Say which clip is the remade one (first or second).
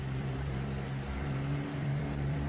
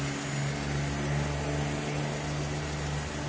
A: first